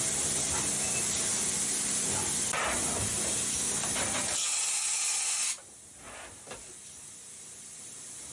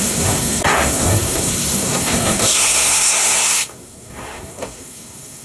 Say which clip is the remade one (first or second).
second